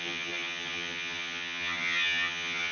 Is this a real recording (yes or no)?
no